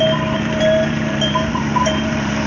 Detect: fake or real fake